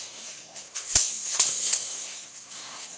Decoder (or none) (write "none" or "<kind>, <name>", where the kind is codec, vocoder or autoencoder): codec, SNAC